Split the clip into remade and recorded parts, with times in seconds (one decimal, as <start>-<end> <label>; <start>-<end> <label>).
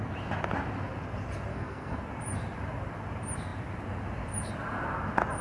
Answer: 0.0-1.5 recorded; 1.5-2.0 remade; 2.0-5.4 recorded